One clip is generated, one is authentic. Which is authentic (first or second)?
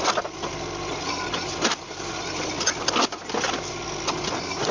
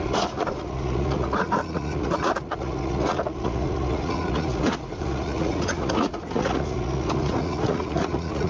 first